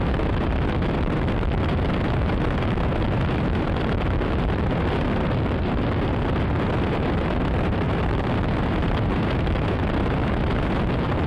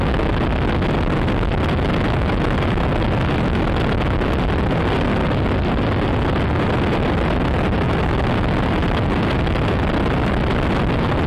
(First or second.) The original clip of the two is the second